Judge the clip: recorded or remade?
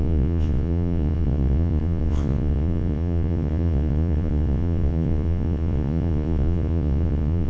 remade